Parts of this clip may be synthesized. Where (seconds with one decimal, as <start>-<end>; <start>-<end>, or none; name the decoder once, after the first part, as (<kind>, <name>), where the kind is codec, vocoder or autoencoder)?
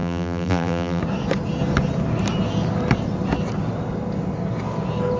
0.0-1.0 (vocoder, BigVGAN v2)